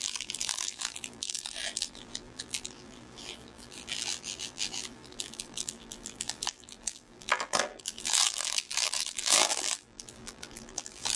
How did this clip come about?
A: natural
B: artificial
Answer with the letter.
B